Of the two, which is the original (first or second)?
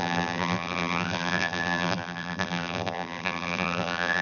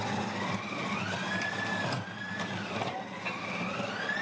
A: second